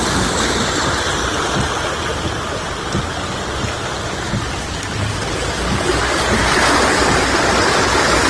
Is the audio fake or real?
real